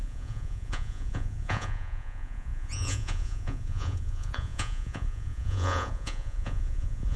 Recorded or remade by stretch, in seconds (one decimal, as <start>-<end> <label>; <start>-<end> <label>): 0.0-7.2 remade